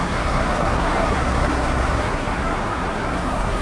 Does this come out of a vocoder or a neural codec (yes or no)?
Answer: yes